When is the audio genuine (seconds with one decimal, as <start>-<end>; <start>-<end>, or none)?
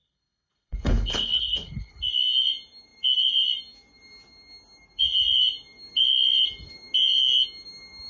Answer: 2.0-8.1